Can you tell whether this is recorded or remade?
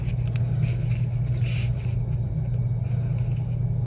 recorded